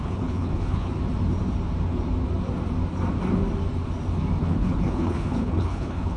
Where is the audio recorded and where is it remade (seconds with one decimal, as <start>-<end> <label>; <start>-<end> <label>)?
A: 0.0-0.9 remade; 0.9-4.4 recorded; 4.4-6.2 remade